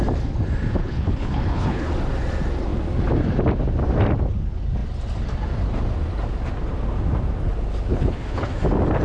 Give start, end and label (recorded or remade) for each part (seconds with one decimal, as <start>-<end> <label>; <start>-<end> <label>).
0.0-0.8 recorded; 0.8-1.9 remade; 1.9-7.9 recorded; 7.9-8.6 remade; 8.6-9.0 recorded